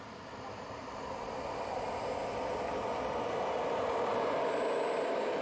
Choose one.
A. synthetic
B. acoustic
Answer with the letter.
B